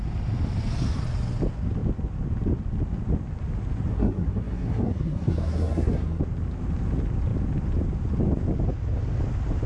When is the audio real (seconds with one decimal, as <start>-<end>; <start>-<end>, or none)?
0.0-3.9; 6.2-9.7